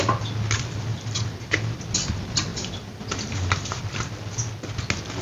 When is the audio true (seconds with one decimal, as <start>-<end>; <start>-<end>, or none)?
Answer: 0.0-0.9; 1.8-2.5; 3.8-5.2